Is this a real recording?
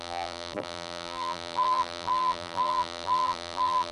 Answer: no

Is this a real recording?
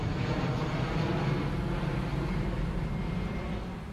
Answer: yes